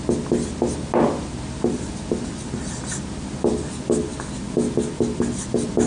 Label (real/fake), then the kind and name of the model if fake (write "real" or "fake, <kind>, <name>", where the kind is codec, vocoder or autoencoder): real